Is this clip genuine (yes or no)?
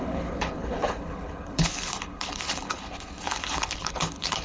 no